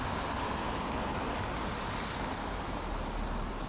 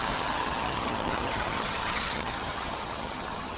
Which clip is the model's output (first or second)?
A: second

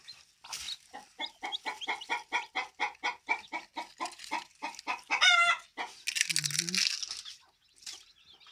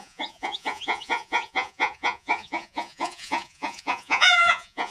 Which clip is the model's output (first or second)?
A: second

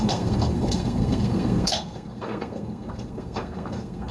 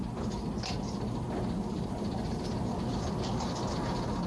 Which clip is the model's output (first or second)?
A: first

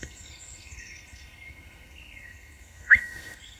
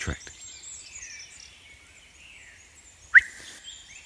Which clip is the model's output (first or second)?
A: first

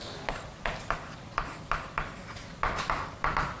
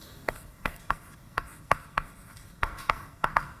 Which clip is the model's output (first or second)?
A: second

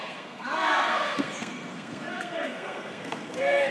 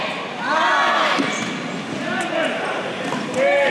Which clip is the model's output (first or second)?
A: first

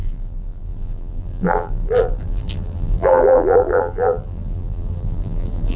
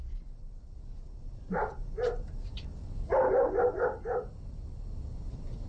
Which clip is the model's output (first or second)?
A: first